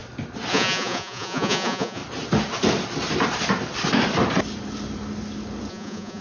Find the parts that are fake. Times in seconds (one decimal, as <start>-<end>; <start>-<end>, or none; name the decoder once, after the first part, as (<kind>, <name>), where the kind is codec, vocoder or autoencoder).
0.5-2.0 (vocoder, Vocos); 5.7-6.2

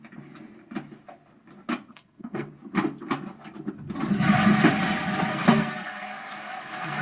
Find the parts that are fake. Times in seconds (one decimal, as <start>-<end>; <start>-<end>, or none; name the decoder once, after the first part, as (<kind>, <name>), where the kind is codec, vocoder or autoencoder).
1.9-2.5 (codec, SNAC); 5.3-7.0

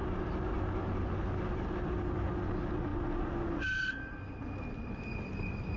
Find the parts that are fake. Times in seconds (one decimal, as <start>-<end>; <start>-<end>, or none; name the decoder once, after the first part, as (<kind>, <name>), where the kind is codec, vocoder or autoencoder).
none

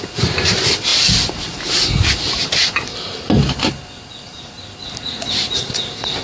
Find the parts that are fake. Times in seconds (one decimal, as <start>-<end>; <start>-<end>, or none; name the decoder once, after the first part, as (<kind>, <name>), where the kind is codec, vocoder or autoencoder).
none

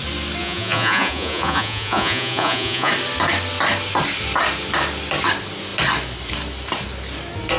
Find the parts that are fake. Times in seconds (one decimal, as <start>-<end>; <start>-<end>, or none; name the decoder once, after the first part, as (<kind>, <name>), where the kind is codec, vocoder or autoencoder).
0.4-2.9 (vocoder, Vocos)

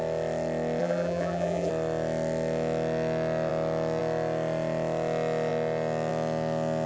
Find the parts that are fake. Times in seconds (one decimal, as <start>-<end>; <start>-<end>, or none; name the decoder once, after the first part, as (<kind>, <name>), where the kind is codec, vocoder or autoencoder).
0.8-1.7 (vocoder, BigVGAN v2)

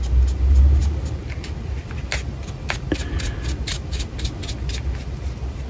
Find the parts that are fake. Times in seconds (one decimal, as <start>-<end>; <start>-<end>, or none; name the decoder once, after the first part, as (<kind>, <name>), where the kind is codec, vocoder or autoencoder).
none